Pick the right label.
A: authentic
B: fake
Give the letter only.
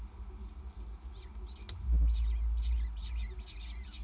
A